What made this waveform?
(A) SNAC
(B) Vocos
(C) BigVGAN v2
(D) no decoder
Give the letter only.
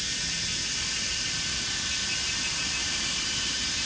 D